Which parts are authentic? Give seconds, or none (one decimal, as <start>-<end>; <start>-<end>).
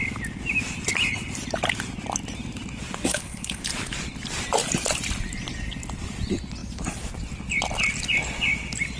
0.0-3.1; 3.6-9.0